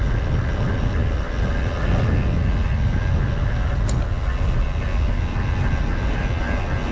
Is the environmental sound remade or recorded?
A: recorded